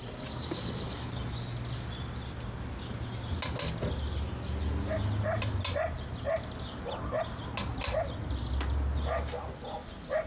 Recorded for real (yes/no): yes